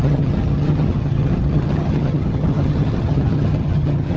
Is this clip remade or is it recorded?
remade